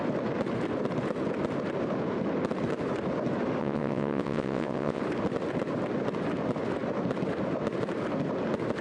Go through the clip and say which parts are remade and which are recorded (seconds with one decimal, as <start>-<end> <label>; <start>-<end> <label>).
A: 0.0-3.6 recorded; 3.6-5.0 remade; 5.0-8.8 recorded